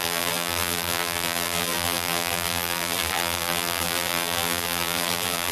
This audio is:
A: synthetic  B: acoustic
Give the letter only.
A